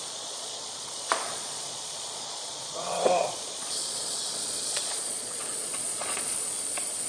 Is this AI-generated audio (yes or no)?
yes